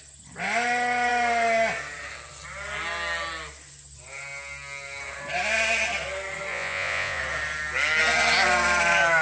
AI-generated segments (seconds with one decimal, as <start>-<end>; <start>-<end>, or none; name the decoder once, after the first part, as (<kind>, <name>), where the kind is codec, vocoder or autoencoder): 6.5-7.2 (vocoder, Vocos)